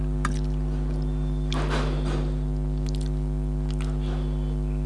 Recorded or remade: recorded